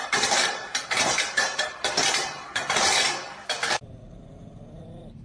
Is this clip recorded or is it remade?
remade